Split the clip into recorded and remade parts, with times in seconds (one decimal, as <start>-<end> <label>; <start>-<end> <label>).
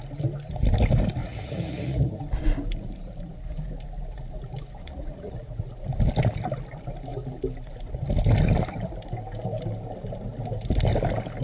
0.0-1.2 recorded; 1.2-2.1 remade; 2.1-4.8 recorded; 4.8-5.5 remade; 5.5-11.4 recorded